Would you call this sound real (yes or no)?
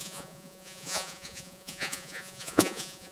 no